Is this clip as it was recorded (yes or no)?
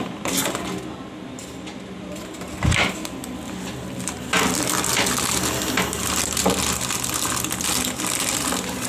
yes